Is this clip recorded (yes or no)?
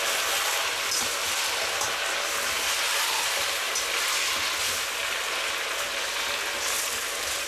yes